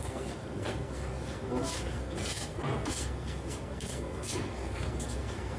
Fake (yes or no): yes